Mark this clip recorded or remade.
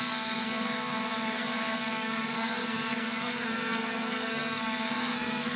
remade